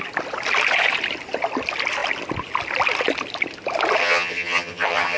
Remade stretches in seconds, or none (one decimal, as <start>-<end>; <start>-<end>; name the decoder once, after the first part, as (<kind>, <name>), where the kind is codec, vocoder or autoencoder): 4.0-5.2 (vocoder, HiFi-GAN)